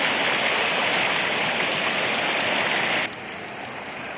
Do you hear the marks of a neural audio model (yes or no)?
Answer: no